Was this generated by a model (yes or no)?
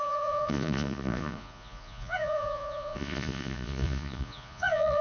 yes